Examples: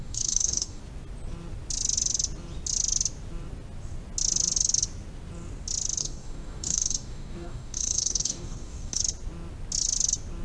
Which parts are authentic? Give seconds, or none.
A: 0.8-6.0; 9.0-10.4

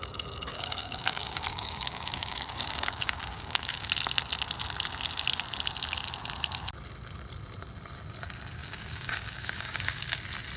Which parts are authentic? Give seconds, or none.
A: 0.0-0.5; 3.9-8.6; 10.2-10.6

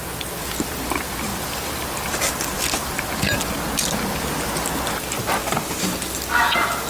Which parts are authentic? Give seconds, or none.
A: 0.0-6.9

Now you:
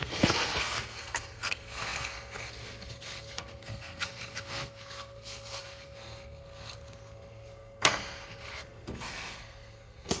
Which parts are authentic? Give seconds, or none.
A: none

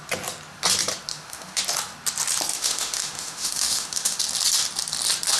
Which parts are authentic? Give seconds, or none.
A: 0.0-1.1; 1.6-2.5; 4.2-5.4